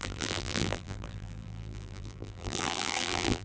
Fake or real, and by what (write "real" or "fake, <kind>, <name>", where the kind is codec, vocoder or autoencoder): fake, vocoder, BigVGAN v2